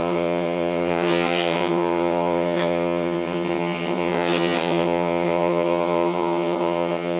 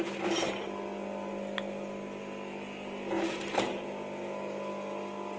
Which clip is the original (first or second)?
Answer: second